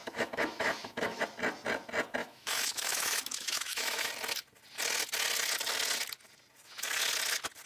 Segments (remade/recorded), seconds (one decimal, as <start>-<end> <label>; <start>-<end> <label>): 0.0-1.2 remade; 1.2-2.2 recorded; 2.2-4.1 remade; 4.1-7.7 recorded